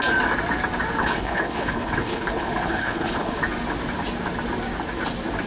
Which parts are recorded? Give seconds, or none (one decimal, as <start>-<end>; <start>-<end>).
0.0-1.0; 3.4-5.5